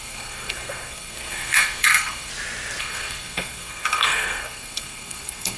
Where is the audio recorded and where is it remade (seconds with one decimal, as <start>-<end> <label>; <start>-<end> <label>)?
0.0-2.3 remade; 2.3-2.8 recorded; 2.8-5.6 remade